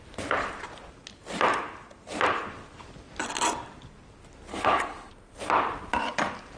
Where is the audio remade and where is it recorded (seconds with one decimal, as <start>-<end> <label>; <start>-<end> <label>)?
0.0-4.5 recorded; 4.5-5.1 remade; 5.1-6.6 recorded